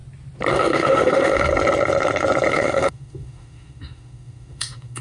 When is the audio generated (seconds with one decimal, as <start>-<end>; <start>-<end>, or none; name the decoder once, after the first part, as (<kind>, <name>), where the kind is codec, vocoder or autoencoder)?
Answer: 0.5-1.5 (autoencoder, DAC-VAE); 2.5-5.0